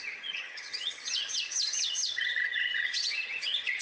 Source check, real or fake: fake